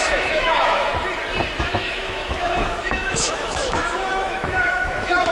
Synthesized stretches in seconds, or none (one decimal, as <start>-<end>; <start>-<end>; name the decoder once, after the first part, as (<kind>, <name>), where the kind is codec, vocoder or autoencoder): 0.0-0.9 (autoencoder, DAC-VAE); 1.6-5.3